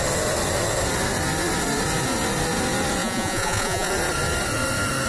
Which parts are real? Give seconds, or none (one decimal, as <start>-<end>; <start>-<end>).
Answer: 0.0-3.0; 3.9-5.1